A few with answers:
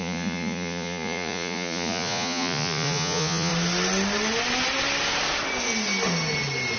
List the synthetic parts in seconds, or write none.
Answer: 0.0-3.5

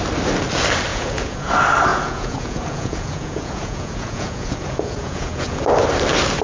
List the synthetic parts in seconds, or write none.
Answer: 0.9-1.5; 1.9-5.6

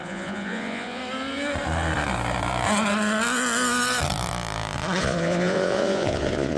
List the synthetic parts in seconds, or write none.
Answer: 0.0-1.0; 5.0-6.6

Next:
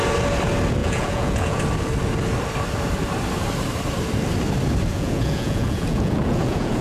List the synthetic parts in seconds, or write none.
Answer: 0.8-1.6; 4.9-6.8